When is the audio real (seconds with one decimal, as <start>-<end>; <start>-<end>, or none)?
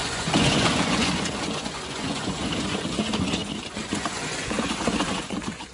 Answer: none